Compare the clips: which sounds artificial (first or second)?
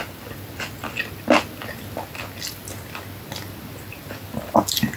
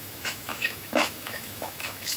second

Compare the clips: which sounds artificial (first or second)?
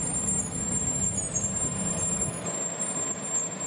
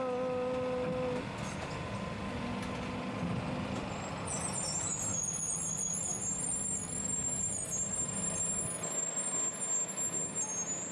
first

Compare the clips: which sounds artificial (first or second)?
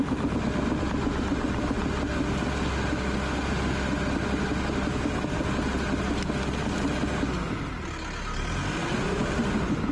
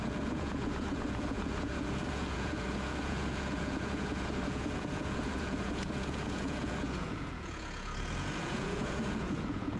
second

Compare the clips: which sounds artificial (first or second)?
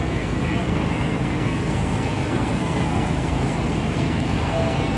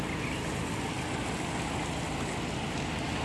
first